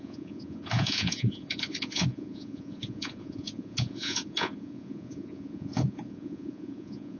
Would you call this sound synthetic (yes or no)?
yes